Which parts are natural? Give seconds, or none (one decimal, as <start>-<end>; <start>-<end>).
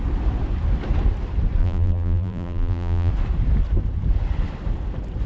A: 0.0-1.6; 3.1-5.3